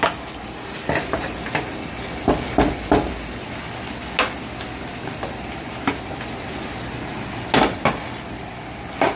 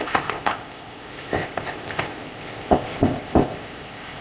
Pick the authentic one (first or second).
first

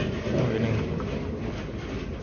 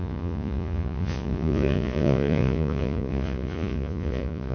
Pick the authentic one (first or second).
first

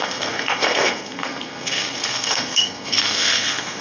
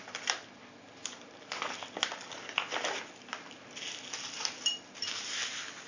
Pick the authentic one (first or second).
second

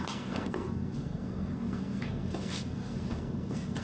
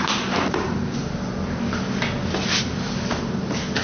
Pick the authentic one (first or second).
second